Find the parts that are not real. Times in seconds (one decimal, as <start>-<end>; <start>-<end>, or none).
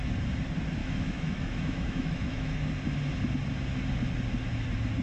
0.8-2.7